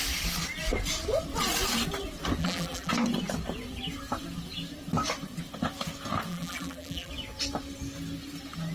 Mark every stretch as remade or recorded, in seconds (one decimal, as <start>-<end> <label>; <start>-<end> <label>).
0.0-2.4 recorded; 2.4-2.9 remade; 2.9-6.3 recorded; 6.3-7.1 remade; 7.1-8.7 recorded